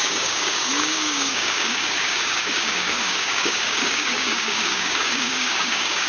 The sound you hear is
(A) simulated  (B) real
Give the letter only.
A